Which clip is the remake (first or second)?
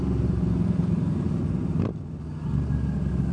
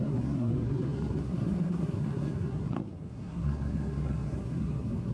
second